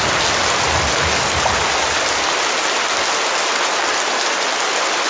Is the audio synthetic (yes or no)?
no